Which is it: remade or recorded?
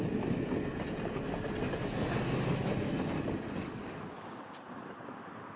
recorded